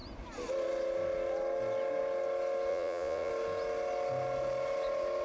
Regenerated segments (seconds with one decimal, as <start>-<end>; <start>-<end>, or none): 2.7-3.3